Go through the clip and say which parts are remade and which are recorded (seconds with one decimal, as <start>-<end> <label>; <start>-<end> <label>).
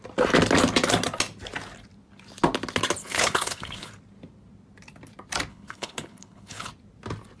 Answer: 0.0-3.0 recorded; 3.0-3.9 remade; 3.9-5.5 recorded; 5.5-6.7 remade; 6.7-7.4 recorded